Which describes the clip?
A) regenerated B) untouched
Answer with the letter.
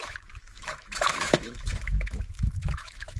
A